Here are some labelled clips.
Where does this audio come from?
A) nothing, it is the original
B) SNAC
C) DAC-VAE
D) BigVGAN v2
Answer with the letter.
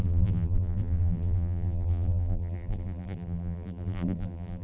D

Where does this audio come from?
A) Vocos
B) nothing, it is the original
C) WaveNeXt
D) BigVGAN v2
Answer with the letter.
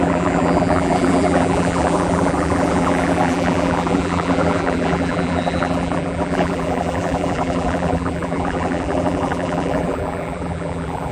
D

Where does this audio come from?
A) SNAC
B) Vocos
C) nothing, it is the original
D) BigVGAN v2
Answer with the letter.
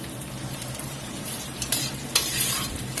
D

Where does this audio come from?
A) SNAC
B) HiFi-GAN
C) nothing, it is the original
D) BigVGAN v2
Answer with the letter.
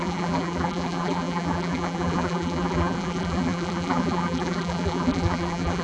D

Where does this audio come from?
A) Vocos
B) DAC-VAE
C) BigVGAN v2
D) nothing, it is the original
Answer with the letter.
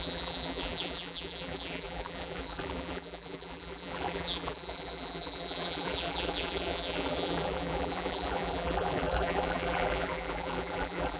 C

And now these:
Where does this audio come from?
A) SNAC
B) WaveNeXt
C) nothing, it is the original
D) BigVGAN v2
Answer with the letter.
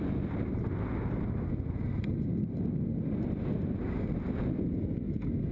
C